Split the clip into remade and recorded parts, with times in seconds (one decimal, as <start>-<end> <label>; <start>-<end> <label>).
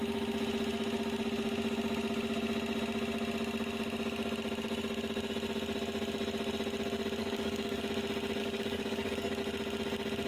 0.0-7.2 recorded; 7.2-7.8 remade; 7.8-8.4 recorded; 8.4-9.4 remade; 9.4-10.3 recorded